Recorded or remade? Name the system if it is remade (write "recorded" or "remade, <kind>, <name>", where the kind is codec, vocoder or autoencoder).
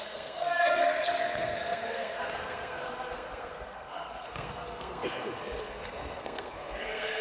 remade, codec, SNAC